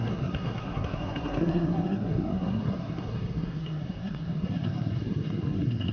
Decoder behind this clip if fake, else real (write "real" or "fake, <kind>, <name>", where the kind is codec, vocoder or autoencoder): fake, codec, SNAC